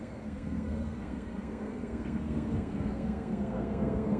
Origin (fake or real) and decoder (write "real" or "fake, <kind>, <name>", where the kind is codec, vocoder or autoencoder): fake, codec, SNAC